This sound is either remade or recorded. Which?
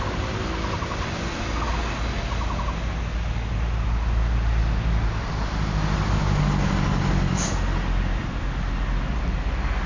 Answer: recorded